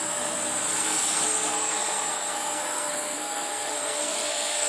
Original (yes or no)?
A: no